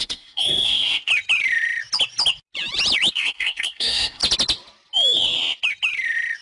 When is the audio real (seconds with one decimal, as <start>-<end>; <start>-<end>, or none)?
1.1-3.1; 4.2-6.4